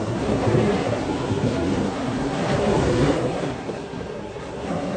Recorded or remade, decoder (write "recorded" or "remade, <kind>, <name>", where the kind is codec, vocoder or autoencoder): remade, codec, SNAC